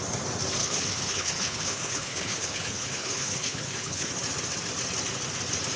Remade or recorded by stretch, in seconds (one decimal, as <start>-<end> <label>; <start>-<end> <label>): 0.0-0.6 recorded; 0.6-4.1 remade; 4.1-5.8 recorded